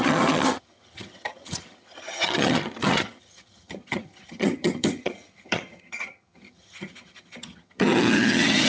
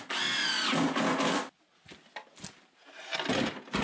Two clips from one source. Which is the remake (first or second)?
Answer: first